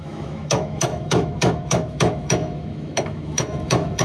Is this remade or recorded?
remade